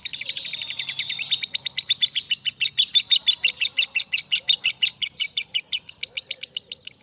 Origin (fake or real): real